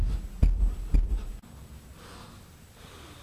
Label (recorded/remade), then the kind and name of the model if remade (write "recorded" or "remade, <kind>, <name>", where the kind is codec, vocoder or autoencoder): recorded